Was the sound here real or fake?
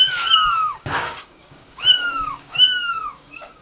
fake